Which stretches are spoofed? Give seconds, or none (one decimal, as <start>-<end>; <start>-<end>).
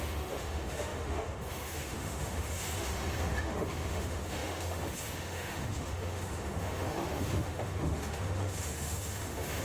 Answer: 0.0-9.6